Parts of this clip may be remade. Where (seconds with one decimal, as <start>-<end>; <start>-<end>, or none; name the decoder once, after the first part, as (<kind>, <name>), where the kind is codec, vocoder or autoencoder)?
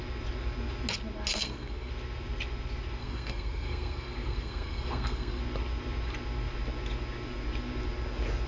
1.3-1.9 (codec, SNAC); 3.0-5.4